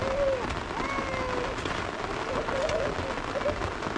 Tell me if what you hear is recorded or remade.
recorded